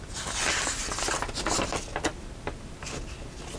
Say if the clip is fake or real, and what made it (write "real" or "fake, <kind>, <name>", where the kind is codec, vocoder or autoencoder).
real